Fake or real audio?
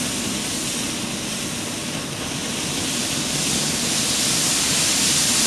real